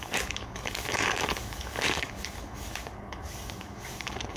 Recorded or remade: remade